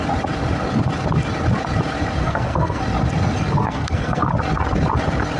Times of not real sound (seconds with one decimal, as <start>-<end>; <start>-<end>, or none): 2.2-2.8; 3.6-4.3